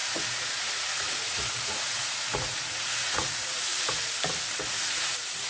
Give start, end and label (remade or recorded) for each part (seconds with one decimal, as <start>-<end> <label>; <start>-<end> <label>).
0.0-3.7 remade; 3.7-4.7 recorded; 4.7-5.5 remade